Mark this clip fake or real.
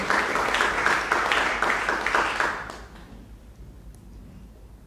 real